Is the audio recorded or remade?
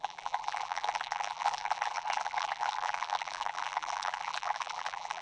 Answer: remade